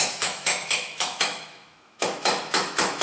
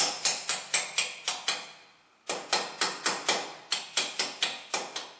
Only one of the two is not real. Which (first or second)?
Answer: first